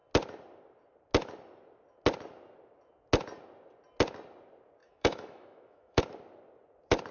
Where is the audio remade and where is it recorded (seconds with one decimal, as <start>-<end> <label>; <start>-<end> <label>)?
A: 0.0-4.8 recorded; 4.8-6.0 remade; 6.0-7.1 recorded